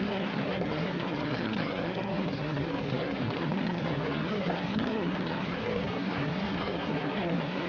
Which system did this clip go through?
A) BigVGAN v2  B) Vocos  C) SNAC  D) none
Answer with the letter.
C